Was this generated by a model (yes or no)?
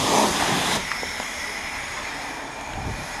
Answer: no